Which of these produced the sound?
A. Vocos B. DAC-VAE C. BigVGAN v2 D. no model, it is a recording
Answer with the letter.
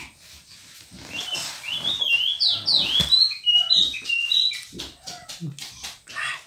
D